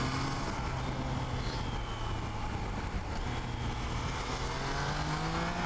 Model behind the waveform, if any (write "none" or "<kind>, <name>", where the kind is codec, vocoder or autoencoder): none